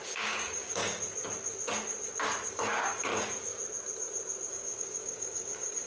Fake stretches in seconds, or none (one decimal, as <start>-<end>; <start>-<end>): 0.0-0.8; 2.5-3.1; 4.5-5.9